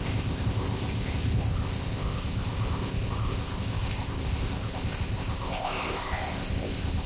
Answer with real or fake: fake